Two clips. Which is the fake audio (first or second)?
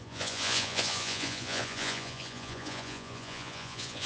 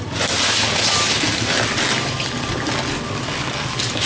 first